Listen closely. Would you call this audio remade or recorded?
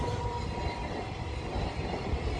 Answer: recorded